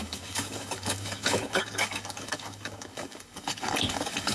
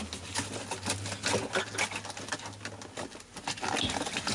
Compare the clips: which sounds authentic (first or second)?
second